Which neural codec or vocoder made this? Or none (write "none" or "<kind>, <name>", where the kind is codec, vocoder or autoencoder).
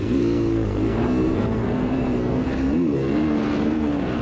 codec, SNAC